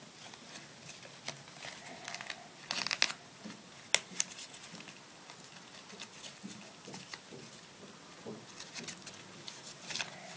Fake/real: real